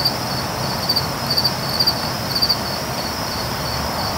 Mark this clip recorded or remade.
remade